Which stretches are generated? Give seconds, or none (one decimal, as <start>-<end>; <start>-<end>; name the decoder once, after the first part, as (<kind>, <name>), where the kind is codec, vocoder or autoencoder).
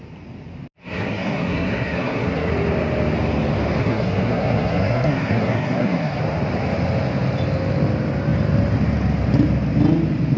0.8-2.5 (codec, SNAC); 3.8-6.2